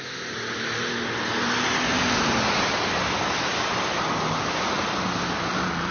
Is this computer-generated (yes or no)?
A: no